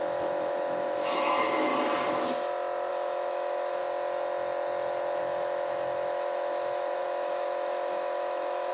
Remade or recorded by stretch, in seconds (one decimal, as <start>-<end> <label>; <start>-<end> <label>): 0.0-1.7 remade; 1.7-2.9 recorded; 2.9-3.8 remade; 3.8-5.2 recorded; 5.2-8.7 remade